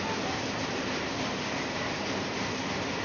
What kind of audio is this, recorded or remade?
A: recorded